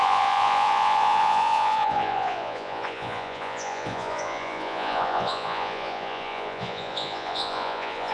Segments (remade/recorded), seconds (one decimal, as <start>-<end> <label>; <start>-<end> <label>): 0.0-8.1 remade